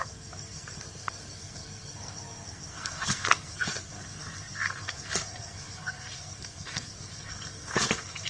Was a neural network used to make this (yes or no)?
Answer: yes